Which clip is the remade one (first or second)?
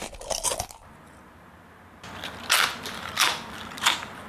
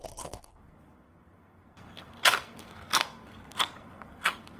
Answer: second